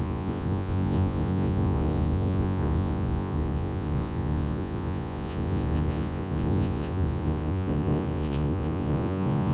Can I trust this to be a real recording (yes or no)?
no